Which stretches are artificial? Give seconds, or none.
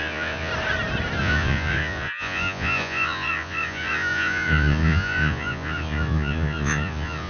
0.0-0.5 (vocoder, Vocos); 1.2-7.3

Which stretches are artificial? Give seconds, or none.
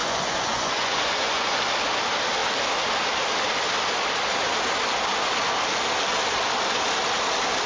0.0-1.6 (vocoder, Vocos)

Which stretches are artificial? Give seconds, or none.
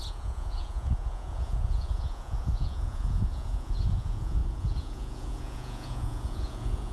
0.0-6.9 (vocoder, Vocos)